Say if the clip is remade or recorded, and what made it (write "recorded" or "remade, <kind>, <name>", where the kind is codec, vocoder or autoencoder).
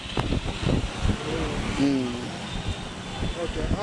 recorded